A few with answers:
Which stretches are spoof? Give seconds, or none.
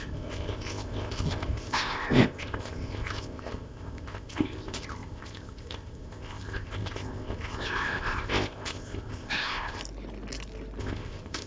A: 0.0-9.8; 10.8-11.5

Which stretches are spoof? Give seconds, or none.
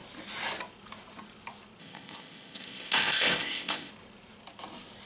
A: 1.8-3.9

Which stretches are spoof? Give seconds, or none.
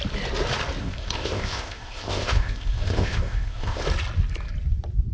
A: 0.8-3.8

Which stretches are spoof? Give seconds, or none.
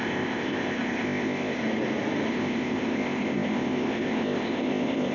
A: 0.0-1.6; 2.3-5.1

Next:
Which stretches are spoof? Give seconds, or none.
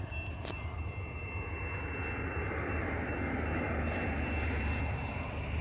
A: none